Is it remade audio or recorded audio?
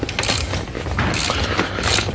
recorded